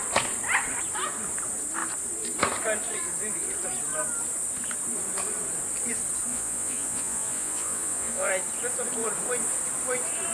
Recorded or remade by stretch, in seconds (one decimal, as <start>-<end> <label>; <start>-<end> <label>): 0.0-6.3 recorded; 6.3-8.3 remade; 8.3-10.3 recorded